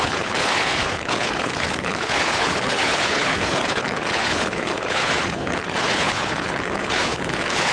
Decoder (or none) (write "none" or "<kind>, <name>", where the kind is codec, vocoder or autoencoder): codec, HILCodec